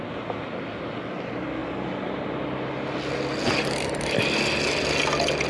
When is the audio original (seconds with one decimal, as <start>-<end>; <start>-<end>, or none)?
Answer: 0.0-5.5